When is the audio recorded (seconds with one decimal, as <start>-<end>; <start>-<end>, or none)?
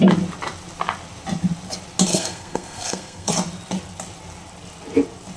0.0-2.1; 3.3-5.4